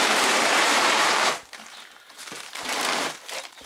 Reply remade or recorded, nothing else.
remade